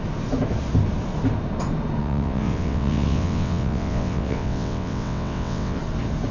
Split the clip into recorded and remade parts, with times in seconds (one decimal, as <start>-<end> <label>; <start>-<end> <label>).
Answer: 0.0-2.0 recorded; 2.0-5.8 remade; 5.8-6.3 recorded